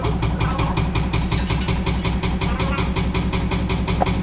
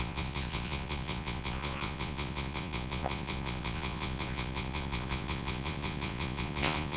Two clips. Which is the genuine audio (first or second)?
first